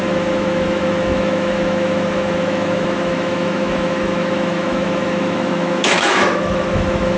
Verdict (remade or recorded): remade